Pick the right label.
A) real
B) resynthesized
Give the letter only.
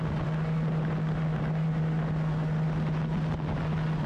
A